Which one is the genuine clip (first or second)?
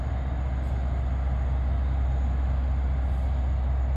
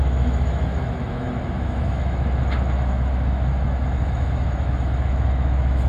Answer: first